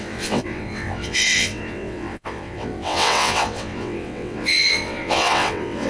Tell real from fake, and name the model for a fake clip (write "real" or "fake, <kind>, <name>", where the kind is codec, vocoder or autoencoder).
fake, vocoder, WaveNeXt